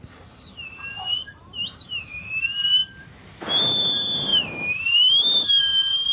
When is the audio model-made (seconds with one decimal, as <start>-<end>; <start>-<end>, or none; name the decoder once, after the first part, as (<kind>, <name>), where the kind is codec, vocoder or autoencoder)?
1.3-2.3 (vocoder, BigVGAN v2); 4.3-5.6

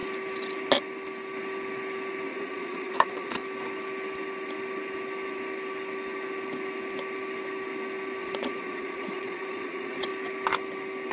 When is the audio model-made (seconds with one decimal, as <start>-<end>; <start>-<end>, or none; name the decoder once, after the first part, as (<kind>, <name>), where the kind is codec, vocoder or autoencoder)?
2.3-3.4 (vocoder, Vocos); 8.2-10.1

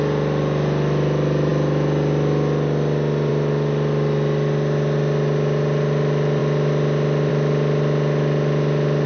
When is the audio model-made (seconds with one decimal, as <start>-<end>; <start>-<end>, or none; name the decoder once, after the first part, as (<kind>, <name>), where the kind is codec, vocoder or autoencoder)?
none